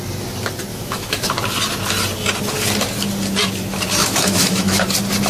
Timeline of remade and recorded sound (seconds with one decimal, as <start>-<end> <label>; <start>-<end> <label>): 0.0-0.7 recorded; 0.7-1.3 remade; 1.3-4.0 recorded; 4.0-4.8 remade; 4.8-5.3 recorded